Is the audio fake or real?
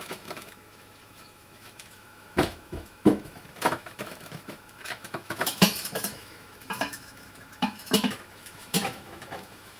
fake